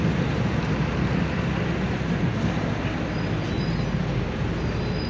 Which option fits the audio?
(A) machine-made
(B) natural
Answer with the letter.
B